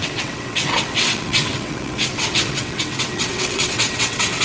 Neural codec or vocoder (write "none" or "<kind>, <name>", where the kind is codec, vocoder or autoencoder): vocoder, WaveNeXt